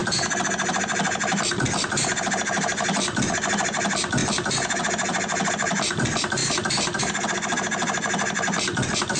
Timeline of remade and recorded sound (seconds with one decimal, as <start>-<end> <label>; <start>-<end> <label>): 0.0-9.2 recorded